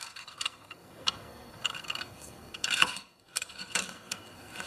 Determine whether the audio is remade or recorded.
remade